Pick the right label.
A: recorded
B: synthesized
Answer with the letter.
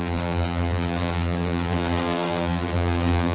B